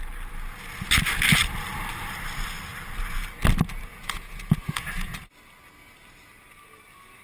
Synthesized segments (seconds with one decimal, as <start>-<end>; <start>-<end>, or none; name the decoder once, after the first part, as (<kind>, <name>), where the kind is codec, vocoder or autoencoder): 3.9-5.3 (vocoder, Vocos)